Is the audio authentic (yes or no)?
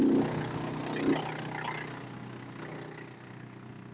yes